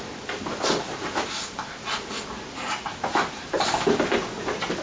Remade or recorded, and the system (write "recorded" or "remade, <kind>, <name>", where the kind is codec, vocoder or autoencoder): recorded